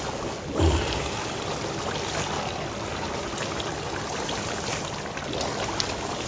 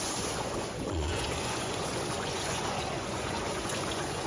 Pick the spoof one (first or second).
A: second